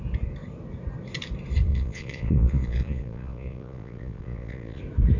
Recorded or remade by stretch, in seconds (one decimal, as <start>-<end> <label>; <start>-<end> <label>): 0.0-1.7 recorded; 1.7-4.8 remade; 4.8-5.2 recorded